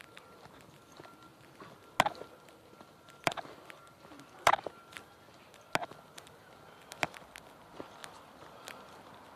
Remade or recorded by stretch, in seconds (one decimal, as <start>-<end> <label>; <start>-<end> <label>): 0.0-9.4 recorded